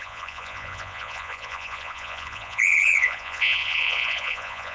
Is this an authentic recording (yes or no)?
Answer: no